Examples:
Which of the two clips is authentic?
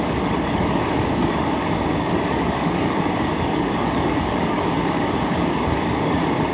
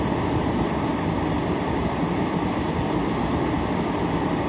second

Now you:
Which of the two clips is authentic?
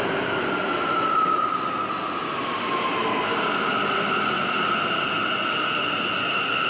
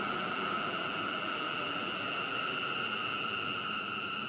first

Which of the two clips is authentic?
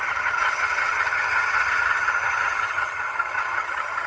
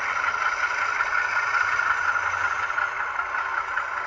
second